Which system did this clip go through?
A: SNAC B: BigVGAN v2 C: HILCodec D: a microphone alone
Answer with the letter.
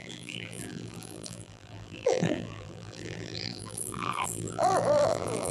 B